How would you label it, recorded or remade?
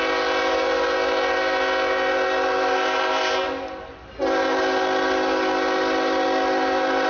recorded